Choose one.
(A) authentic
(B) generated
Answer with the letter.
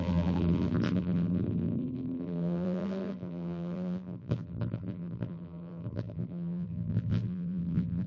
B